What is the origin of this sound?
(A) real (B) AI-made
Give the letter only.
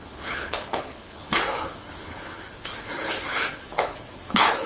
B